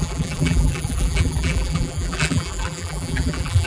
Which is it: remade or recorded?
remade